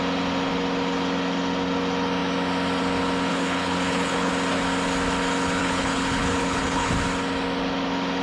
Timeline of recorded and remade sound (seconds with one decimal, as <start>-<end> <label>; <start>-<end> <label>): 0.0-3.3 recorded; 3.3-4.3 remade; 4.3-5.6 recorded; 5.6-6.9 remade; 6.9-8.2 recorded